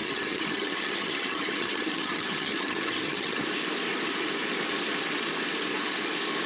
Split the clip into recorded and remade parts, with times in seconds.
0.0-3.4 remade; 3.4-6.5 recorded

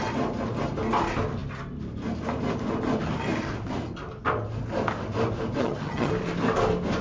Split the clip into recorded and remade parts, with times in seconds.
0.0-5.6 recorded; 5.6-6.1 remade; 6.1-7.0 recorded